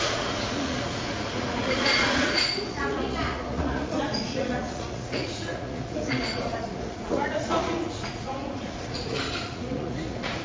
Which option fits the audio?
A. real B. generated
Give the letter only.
B